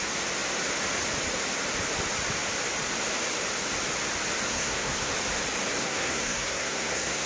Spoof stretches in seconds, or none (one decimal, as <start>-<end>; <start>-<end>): 4.5-5.1; 5.8-7.3